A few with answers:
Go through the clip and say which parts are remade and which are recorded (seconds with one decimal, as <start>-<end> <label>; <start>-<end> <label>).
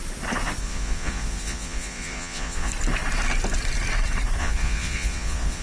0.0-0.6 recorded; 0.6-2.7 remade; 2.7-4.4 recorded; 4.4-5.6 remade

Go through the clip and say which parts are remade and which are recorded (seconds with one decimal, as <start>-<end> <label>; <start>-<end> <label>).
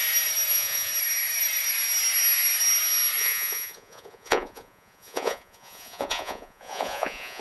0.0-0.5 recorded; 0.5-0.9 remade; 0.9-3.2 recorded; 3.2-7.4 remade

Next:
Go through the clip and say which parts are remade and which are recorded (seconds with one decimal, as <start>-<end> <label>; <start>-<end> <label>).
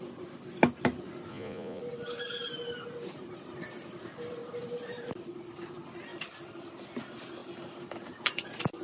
0.0-1.3 recorded; 1.3-1.8 remade; 1.8-8.8 recorded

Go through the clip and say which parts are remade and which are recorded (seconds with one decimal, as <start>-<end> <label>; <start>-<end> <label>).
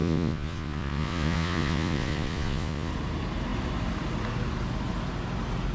0.0-2.9 remade; 2.9-5.7 recorded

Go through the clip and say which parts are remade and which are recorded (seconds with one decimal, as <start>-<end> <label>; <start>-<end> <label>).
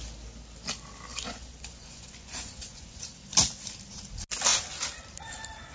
0.0-1.1 recorded; 1.1-3.3 remade; 3.3-5.7 recorded